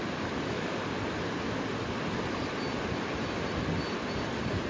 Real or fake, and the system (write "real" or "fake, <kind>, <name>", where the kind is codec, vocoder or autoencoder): real